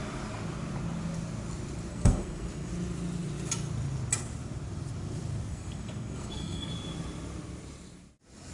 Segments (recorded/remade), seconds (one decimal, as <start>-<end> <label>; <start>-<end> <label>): 0.0-1.9 recorded; 1.9-2.7 remade; 2.7-5.5 recorded; 5.5-6.7 remade; 6.7-8.5 recorded